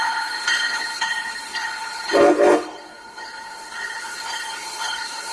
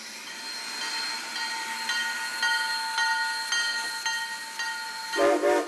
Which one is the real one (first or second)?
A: second